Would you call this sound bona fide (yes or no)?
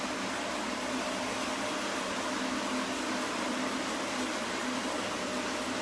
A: yes